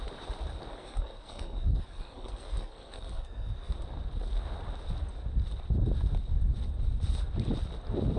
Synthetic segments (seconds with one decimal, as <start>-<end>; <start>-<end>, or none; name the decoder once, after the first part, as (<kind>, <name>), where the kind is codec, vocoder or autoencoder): 0.7-3.7 (codec, SNAC)